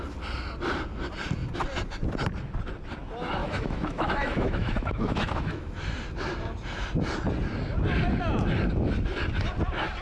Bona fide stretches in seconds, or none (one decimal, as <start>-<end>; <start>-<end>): 0.0-3.4; 5.6-10.0